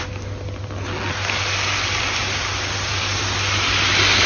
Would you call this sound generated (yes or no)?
no